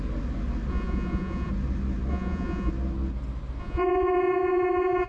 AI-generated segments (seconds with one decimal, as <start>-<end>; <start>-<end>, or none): 0.7-1.5; 2.1-2.7; 3.6-5.1